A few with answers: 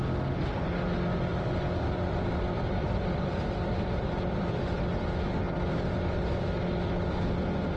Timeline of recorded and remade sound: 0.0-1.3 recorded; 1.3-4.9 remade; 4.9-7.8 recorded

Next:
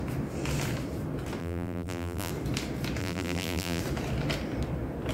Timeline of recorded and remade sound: 0.0-1.4 recorded; 1.4-2.3 remade; 2.3-3.0 recorded; 3.0-3.8 remade; 3.8-5.1 recorded

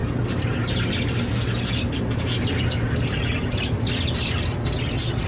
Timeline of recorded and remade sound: 0.0-5.3 recorded

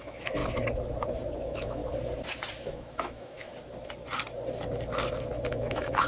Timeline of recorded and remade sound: 0.0-0.4 remade; 0.4-1.4 recorded; 1.4-1.8 remade; 1.8-2.6 recorded; 2.6-3.5 remade; 3.5-5.5 recorded; 5.5-6.1 remade

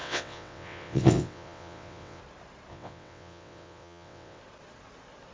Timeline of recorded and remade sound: 0.0-2.2 remade; 2.2-2.7 recorded; 2.7-4.4 remade; 4.4-5.3 recorded

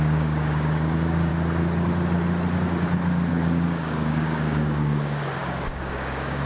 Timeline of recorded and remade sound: 0.0-1.3 remade; 1.3-3.3 recorded; 3.3-6.5 remade

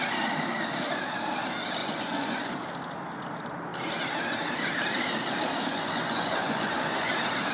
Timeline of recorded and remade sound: 0.0-1.8 recorded; 1.8-2.5 remade; 2.5-5.7 recorded; 5.7-7.1 remade; 7.1-7.5 recorded

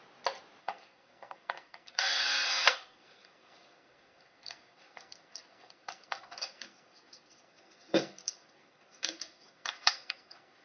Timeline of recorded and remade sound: 0.0-0.6 recorded; 0.6-10.6 remade